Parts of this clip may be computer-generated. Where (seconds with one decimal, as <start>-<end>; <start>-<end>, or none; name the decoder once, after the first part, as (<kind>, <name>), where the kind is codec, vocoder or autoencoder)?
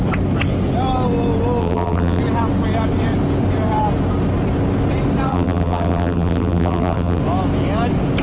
1.6-2.2 (vocoder, BigVGAN v2); 5.3-7.2